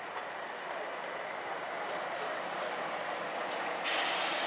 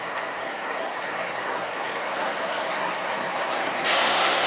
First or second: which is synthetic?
second